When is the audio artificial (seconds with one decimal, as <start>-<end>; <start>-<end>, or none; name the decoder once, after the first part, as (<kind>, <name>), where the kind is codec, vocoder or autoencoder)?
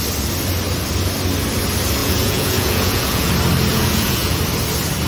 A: 2.0-3.3 (vocoder, Vocos); 3.7-4.4